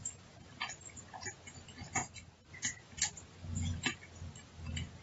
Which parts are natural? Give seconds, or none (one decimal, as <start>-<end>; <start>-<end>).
0.0-5.0